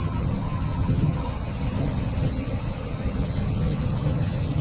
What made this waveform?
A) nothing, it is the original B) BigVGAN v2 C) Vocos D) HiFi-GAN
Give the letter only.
D